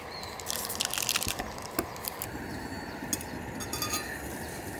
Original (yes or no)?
yes